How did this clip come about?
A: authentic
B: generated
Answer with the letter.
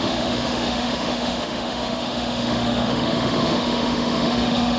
B